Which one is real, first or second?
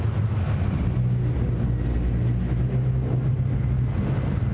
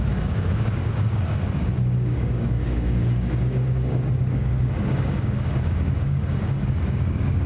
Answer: first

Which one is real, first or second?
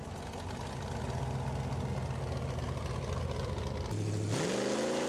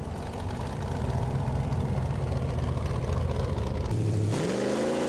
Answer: first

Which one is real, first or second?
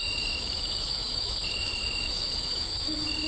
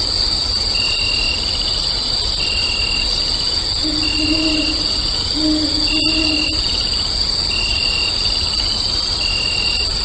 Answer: second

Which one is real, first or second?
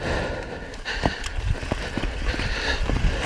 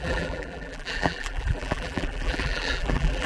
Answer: first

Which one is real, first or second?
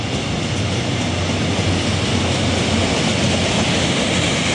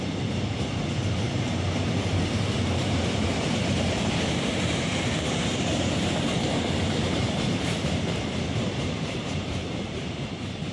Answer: first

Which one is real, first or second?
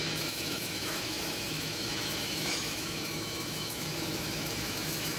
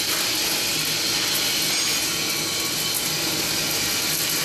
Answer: second